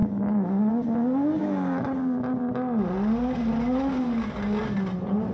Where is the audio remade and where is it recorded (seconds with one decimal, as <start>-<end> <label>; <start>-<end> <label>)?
0.0-5.3 recorded